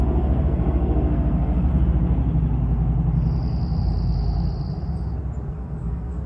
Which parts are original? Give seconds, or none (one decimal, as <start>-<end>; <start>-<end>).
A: 1.7-5.5